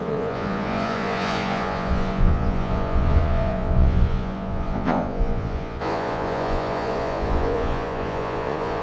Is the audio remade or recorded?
remade